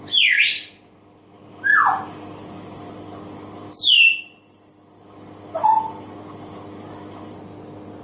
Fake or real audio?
real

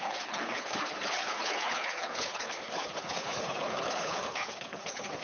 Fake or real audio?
fake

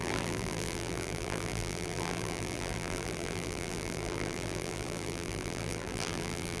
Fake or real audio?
fake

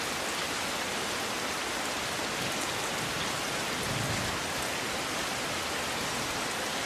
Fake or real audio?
real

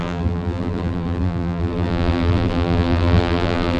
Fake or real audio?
fake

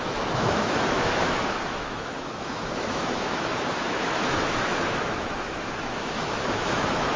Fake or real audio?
fake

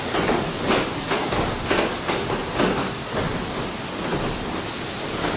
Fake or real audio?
real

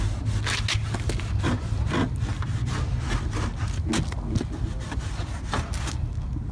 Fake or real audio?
real